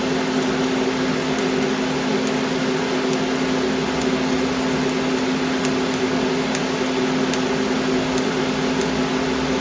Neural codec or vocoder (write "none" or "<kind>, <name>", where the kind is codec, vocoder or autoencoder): none